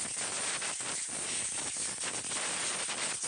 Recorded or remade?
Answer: recorded